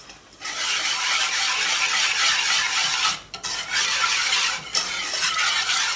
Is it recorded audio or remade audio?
recorded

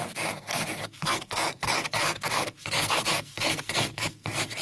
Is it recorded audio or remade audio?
remade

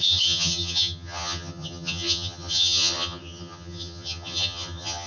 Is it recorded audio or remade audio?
remade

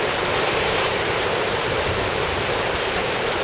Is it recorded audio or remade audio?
remade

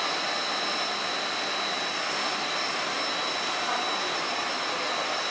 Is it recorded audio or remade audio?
recorded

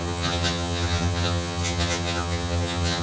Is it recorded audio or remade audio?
remade